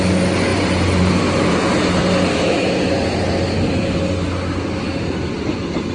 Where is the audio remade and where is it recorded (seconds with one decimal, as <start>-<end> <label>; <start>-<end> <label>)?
0.0-0.5 recorded; 0.5-1.5 remade; 1.5-2.0 recorded; 2.0-2.7 remade; 2.7-5.9 recorded